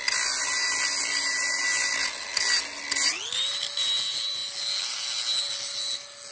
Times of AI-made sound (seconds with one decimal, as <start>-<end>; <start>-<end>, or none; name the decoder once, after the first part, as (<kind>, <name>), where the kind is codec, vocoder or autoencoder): none